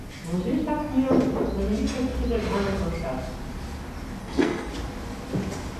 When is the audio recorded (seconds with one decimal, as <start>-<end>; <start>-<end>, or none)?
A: 0.0-4.2; 4.7-5.8